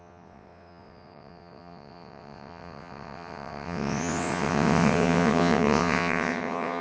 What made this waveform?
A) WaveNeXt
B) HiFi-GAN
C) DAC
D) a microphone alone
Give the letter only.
A